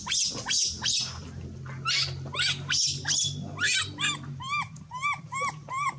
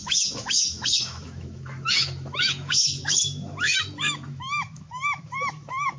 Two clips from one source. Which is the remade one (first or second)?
second